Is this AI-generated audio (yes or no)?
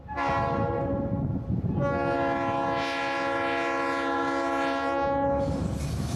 no